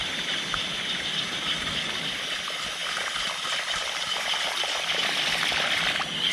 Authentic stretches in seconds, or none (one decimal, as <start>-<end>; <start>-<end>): 0.0-6.3